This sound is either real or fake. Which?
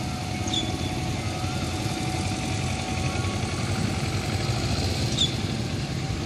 real